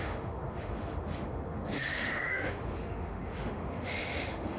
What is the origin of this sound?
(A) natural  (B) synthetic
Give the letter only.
B